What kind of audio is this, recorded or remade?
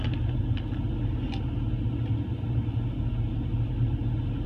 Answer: recorded